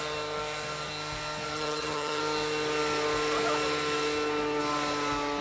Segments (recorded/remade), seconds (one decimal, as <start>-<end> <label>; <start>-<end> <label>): 0.0-1.5 recorded; 1.5-2.2 remade; 2.2-5.4 recorded